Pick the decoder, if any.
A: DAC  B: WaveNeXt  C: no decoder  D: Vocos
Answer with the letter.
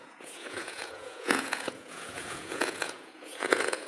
D